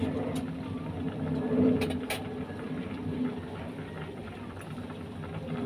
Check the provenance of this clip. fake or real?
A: real